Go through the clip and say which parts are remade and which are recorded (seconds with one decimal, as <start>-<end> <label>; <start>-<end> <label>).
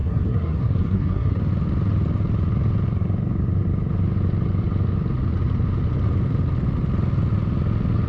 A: 0.0-1.4 remade; 1.4-8.1 recorded